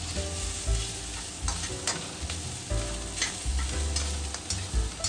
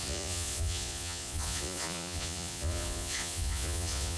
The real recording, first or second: first